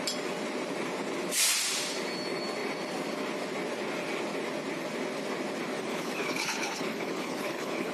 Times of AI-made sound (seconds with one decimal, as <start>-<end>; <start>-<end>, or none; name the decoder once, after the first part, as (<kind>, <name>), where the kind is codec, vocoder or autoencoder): 5.9-7.9 (codec, HILCodec)